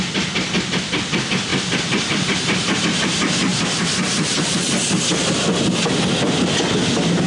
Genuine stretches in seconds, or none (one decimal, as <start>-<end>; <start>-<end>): 0.0-3.5; 4.7-7.3